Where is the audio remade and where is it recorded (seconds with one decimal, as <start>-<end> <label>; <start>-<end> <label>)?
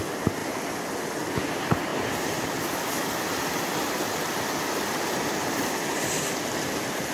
0.0-7.1 recorded